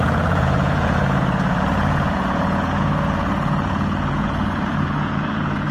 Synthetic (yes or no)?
yes